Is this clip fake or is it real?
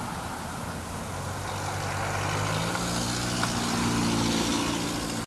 real